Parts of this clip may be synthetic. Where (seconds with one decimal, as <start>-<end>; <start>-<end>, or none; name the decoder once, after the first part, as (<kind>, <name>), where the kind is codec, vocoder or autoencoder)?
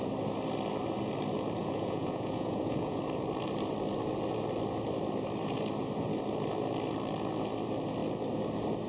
1.6-3.0 (vocoder, Vocos)